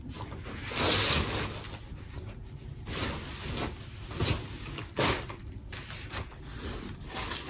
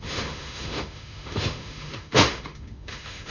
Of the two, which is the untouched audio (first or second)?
first